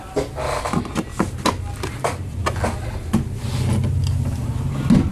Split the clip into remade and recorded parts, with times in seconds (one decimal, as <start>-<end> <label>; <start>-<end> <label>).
0.0-5.1 recorded